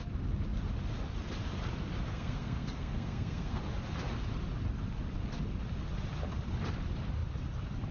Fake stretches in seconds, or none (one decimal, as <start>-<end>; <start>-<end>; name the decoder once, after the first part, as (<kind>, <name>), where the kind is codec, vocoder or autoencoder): 2.1-3.6 (codec, SNAC)

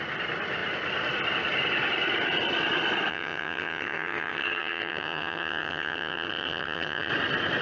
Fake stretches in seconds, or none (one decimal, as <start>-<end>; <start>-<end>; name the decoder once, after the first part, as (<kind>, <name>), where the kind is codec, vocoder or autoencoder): 3.1-7.1 (vocoder, HiFi-GAN)

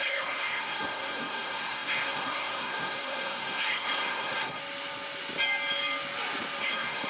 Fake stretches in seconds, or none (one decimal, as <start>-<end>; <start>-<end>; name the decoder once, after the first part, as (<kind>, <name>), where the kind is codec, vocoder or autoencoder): 0.0-4.6 (codec, SNAC); 6.6-7.1

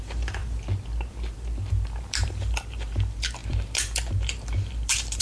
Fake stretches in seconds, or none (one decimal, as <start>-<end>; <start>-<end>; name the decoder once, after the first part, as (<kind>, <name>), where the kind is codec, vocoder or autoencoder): 0.0-0.4 (vocoder, BigVGAN v2); 1.1-5.2

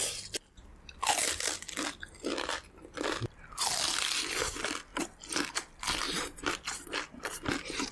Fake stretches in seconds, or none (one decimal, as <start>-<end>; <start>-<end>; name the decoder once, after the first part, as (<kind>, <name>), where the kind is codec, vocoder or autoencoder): none